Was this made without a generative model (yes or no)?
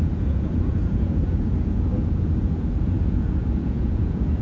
no